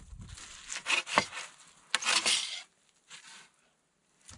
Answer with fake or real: real